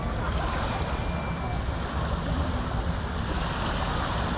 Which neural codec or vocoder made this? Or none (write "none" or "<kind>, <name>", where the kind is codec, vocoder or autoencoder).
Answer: none